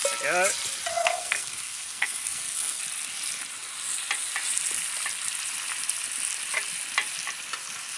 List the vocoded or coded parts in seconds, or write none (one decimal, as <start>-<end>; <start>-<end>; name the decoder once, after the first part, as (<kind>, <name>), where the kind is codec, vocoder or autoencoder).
0.9-2.8 (codec, SNAC)